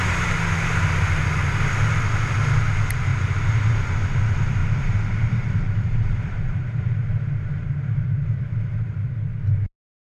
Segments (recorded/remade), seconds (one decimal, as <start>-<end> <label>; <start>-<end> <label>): 0.0-3.1 recorded; 3.1-3.8 remade; 3.8-4.6 recorded; 4.6-9.1 remade; 9.1-10.1 recorded